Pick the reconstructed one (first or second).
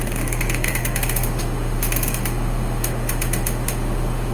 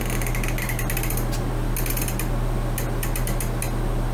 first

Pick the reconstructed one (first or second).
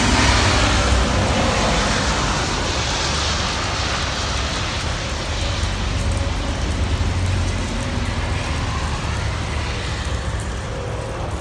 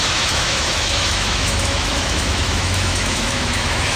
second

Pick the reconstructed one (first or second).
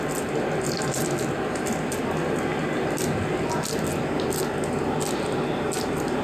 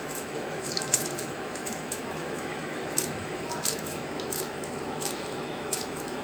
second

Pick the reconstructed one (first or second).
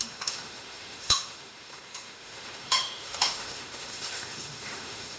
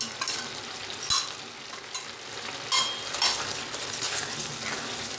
first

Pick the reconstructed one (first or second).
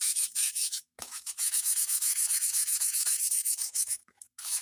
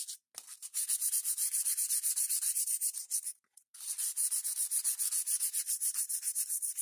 first